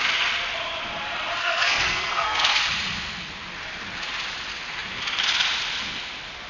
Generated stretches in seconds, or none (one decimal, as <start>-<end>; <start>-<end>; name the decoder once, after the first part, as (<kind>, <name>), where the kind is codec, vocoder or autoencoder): 1.4-2.6 (codec, SNAC)